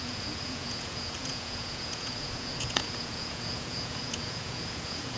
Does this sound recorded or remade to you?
remade